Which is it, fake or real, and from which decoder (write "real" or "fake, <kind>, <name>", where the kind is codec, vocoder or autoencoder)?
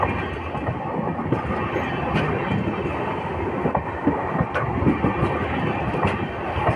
real